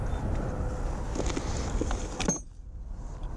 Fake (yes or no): no